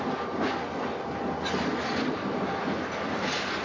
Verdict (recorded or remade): recorded